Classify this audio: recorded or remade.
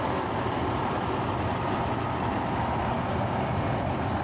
recorded